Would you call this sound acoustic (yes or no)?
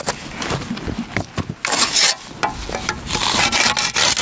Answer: yes